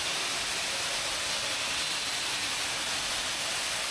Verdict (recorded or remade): recorded